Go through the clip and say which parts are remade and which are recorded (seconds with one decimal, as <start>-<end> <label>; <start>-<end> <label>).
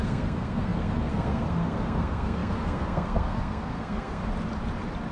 0.0-4.2 remade; 4.2-5.1 recorded